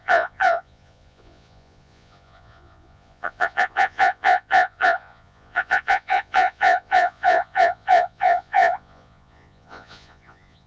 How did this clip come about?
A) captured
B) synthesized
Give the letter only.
B